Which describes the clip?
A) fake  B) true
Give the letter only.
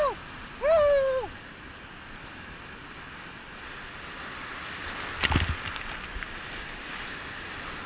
B